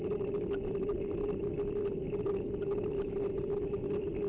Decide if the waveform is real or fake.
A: real